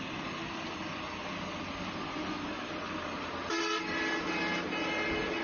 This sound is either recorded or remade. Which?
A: recorded